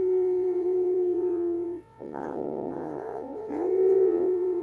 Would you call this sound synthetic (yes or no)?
yes